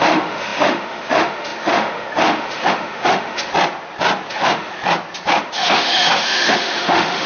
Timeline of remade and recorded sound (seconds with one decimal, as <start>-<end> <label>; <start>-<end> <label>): 0.0-3.5 remade; 3.5-4.3 recorded; 4.3-4.7 remade; 4.7-5.4 recorded; 5.4-7.3 remade